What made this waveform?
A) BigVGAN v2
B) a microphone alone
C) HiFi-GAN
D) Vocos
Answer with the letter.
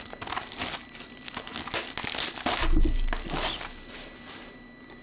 B